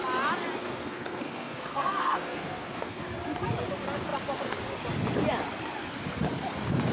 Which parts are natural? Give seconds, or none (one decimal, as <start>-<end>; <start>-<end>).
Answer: 0.0-0.6; 3.0-6.9